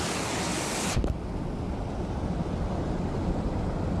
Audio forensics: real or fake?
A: real